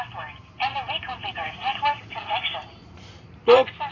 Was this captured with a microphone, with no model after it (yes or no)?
no